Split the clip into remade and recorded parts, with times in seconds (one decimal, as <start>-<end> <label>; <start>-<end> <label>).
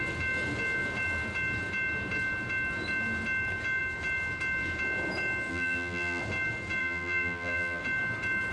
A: 0.0-5.5 recorded; 5.5-6.2 remade; 6.2-6.8 recorded; 6.8-7.8 remade; 7.8-8.5 recorded